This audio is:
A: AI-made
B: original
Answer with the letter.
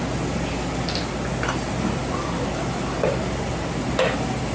B